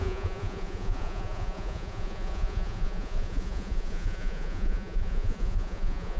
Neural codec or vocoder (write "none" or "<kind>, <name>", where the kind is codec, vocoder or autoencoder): vocoder, Vocos